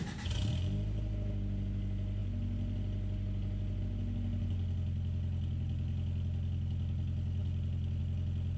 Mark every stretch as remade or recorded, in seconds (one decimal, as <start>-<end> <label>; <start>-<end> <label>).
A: 0.0-8.6 recorded